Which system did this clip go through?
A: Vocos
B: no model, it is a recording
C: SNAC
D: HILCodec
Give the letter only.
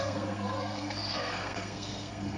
C